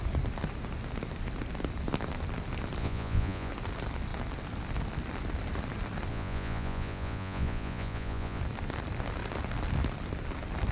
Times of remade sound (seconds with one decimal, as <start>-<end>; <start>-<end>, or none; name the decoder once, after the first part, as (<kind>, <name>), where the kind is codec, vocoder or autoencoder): 2.8-3.5 (vocoder, Vocos); 6.1-8.4